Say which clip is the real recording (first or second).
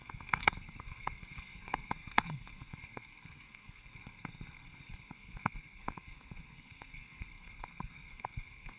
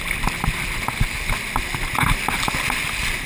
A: second